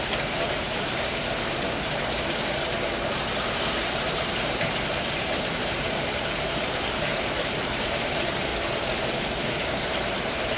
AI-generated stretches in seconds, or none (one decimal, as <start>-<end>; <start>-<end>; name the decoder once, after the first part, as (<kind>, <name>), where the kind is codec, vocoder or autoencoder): 0.0-1.1 (vocoder, BigVGAN v2); 5.1-8.5; 9.0-10.6